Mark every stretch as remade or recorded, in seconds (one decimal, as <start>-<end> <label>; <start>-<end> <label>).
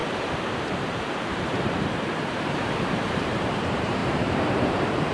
0.0-5.1 remade